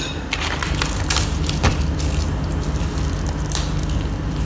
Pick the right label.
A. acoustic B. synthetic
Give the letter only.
A